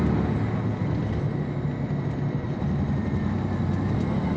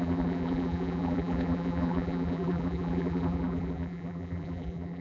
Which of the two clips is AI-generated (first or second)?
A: second